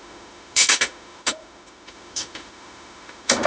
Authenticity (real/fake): fake